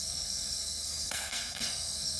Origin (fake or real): fake